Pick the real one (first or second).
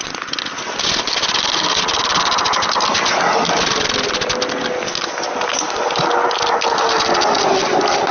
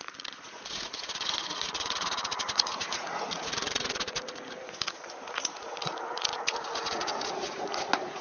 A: first